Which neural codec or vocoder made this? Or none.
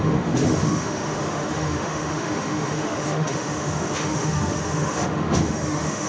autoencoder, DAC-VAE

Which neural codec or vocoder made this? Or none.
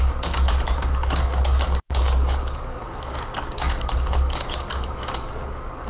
codec, DAC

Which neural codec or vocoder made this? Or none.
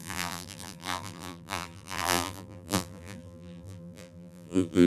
vocoder, BigVGAN v2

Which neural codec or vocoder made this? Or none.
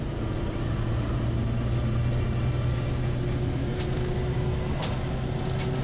none